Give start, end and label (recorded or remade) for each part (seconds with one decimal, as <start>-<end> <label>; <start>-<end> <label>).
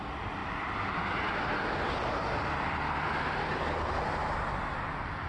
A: 0.0-5.3 recorded